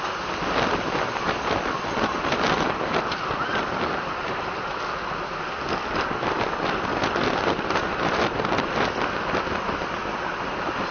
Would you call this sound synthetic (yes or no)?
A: no